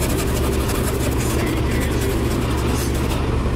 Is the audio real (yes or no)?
yes